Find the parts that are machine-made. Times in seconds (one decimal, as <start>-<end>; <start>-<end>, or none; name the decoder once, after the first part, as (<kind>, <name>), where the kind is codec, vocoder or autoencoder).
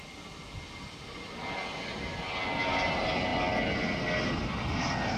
none